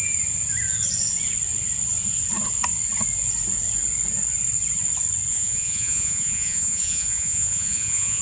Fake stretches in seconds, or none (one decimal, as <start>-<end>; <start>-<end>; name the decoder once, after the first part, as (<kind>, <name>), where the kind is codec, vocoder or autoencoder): 5.3-8.2 (vocoder, Vocos)